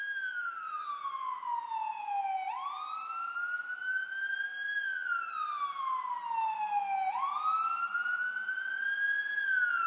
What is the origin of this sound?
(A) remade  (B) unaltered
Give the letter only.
B